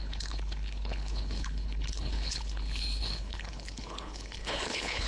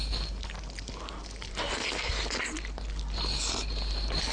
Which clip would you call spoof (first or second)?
first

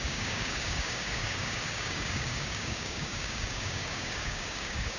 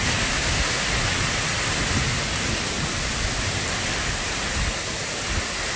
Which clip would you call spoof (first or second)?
first